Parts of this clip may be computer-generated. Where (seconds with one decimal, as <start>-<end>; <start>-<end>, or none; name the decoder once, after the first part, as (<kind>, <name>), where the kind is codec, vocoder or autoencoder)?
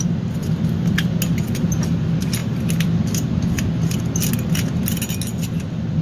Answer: none